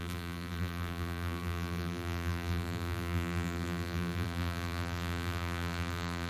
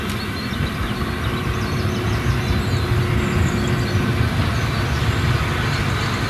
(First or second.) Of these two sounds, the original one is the second